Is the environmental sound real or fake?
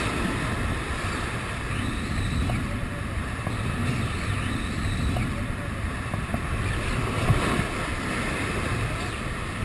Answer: real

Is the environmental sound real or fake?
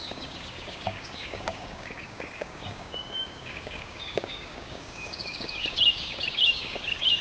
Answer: fake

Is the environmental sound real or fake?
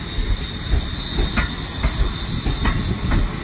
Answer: real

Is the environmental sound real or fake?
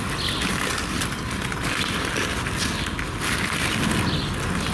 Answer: real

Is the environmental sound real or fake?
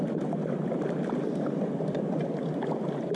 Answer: real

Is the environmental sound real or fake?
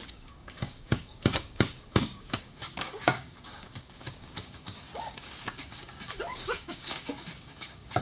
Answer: fake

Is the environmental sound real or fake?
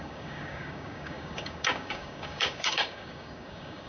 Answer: fake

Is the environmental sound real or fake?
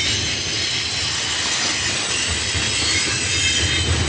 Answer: real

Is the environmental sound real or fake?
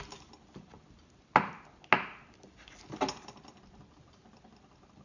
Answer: real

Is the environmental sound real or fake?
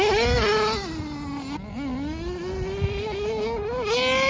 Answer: real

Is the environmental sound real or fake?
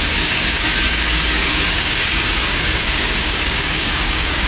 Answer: fake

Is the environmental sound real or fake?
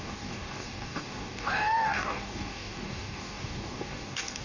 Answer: fake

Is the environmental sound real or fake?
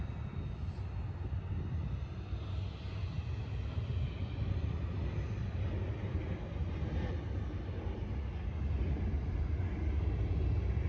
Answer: real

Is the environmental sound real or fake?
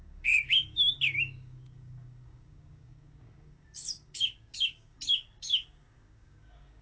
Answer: fake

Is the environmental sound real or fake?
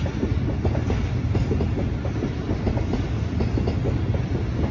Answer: real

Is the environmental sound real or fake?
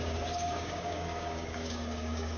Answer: fake